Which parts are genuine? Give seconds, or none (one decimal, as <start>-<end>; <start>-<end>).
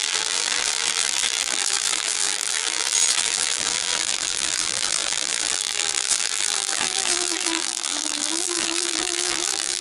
none